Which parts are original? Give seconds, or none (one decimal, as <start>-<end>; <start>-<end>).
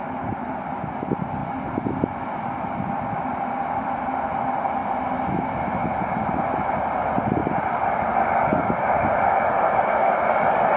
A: 0.0-10.8